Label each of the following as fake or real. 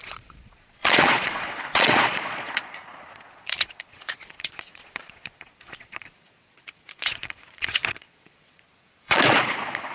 fake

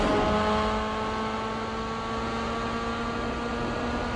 real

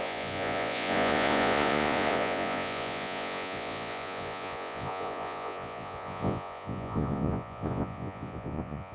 fake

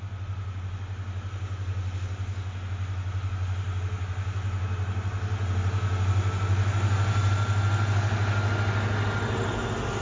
real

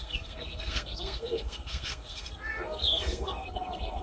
fake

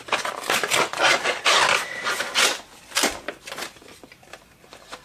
fake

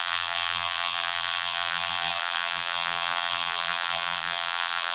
fake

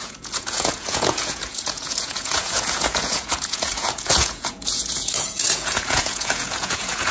fake